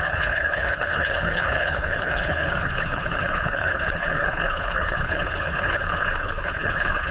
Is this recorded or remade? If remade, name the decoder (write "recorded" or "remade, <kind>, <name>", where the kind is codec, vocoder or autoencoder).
remade, codec, HILCodec